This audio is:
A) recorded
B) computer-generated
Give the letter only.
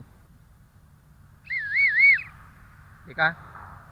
A